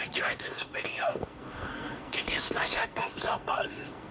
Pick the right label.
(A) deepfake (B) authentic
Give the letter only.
A